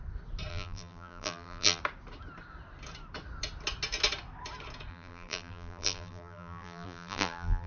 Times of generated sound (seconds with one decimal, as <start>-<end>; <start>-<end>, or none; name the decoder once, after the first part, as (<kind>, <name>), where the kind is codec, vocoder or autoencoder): 0.5-1.8 (vocoder, BigVGAN v2); 4.9-7.7